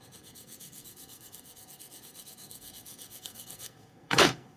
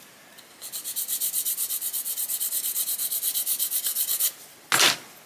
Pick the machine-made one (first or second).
first